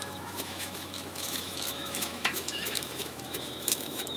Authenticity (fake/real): fake